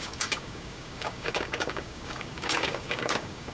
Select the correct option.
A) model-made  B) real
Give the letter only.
A